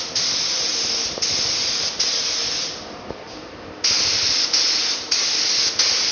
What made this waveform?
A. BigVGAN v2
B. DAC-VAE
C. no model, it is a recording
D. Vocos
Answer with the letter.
C